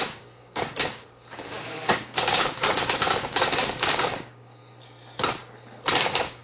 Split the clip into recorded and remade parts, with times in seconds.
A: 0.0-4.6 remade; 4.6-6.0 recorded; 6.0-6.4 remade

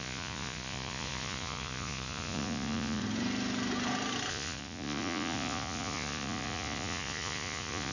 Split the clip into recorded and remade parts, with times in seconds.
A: 0.0-3.0 remade; 3.0-4.3 recorded; 4.3-7.9 remade

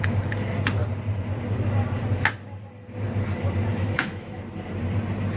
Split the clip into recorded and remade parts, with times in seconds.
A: 0.0-3.7 recorded; 3.7-4.4 remade; 4.4-5.4 recorded

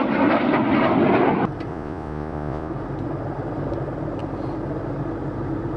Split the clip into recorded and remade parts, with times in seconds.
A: 0.0-1.7 recorded; 1.7-2.7 remade; 2.7-5.8 recorded